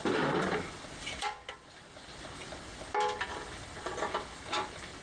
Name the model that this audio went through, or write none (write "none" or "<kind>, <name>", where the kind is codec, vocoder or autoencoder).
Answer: none